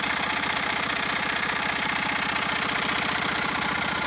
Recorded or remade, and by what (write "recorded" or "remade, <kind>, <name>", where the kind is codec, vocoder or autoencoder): recorded